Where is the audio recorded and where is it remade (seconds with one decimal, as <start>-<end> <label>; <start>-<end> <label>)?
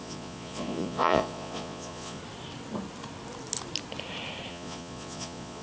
0.0-2.2 remade; 2.2-4.5 recorded; 4.5-5.6 remade